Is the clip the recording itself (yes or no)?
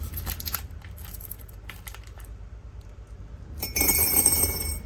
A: no